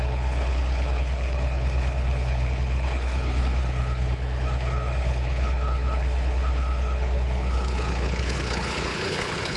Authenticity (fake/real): fake